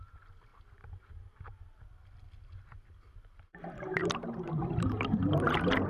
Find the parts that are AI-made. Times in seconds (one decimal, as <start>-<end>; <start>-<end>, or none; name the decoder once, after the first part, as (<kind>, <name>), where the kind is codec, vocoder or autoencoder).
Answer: none